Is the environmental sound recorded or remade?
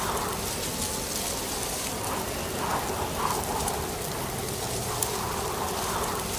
recorded